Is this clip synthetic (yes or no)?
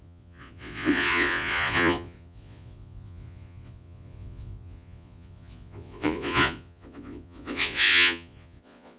yes